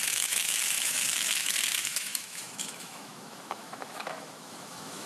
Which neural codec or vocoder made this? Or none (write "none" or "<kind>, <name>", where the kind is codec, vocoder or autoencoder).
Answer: autoencoder, DAC-VAE